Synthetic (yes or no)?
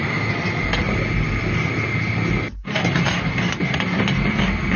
no